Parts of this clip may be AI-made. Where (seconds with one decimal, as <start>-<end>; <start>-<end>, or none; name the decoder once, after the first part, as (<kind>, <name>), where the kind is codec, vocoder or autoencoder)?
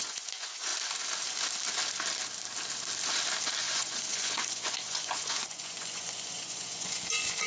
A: 0.0-0.7 (vocoder, Vocos); 3.6-7.5